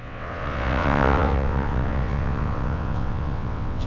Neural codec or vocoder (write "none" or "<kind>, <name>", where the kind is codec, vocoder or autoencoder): vocoder, WaveNeXt